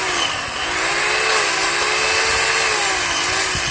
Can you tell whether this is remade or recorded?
recorded